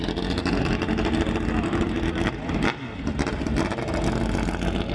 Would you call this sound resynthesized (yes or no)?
no